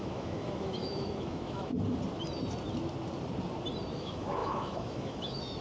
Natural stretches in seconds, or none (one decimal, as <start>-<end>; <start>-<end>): 1.7-3.9